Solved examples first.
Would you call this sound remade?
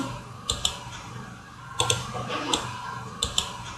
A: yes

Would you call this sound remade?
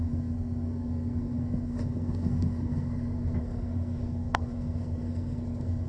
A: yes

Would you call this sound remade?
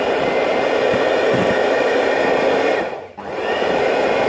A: yes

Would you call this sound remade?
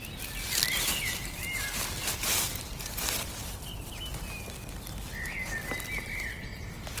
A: no